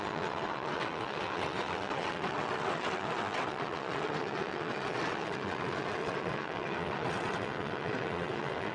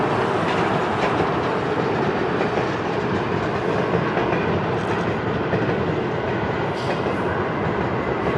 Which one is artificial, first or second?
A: first